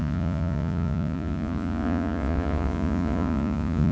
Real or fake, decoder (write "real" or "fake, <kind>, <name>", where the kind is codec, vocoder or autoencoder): fake, vocoder, Vocos